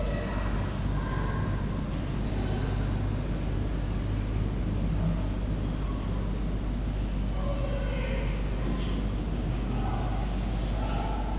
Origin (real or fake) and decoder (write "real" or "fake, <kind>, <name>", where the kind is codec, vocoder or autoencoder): real